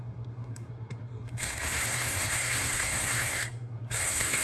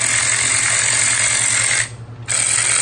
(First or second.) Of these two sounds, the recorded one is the second